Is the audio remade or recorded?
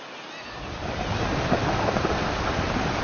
recorded